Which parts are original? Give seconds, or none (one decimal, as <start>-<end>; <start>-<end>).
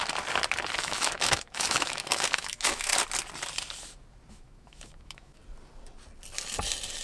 0.0-0.8; 2.9-4.3; 5.4-7.0